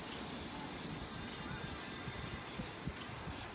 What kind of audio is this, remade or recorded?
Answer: recorded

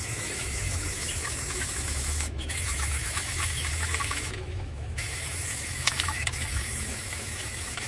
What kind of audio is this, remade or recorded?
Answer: remade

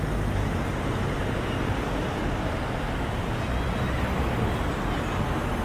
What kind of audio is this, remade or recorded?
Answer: recorded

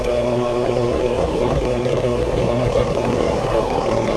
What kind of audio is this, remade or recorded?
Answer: remade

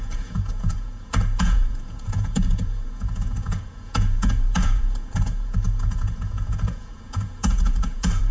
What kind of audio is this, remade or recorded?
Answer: remade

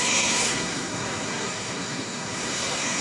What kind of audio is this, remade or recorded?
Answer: remade